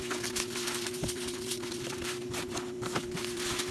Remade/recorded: remade